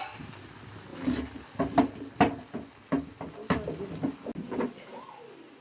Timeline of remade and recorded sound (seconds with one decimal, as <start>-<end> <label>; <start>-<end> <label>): 0.0-5.6 recorded